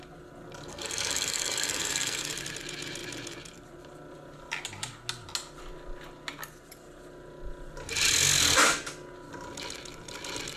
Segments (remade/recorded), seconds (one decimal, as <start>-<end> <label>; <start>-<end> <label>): 0.0-0.7 recorded; 0.7-2.3 remade; 2.3-10.6 recorded